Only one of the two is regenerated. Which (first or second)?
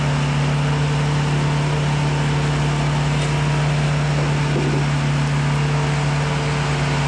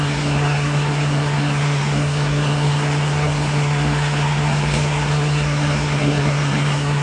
second